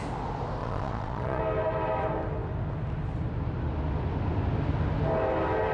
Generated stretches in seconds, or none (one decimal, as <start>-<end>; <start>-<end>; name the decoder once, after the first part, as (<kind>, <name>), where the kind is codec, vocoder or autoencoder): 0.6-1.4 (vocoder, Vocos)